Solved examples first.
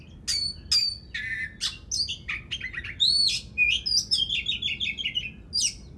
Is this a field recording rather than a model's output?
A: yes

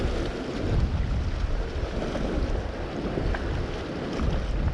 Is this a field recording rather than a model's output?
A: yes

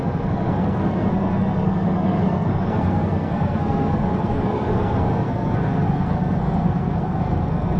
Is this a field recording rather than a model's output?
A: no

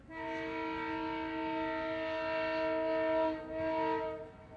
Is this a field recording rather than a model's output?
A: yes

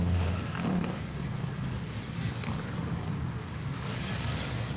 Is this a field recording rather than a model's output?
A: no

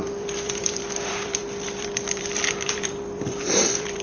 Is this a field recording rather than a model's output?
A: no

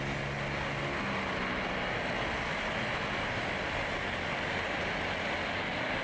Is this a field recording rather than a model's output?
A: yes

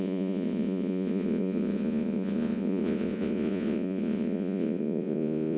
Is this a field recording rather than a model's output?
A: no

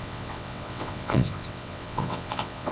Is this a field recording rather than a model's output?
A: no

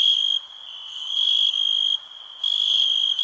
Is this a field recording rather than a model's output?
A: no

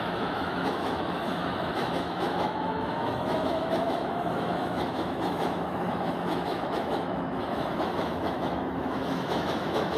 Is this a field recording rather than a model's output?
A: no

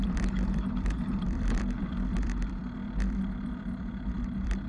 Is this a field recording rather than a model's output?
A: no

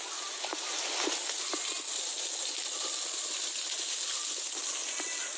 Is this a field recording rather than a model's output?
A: yes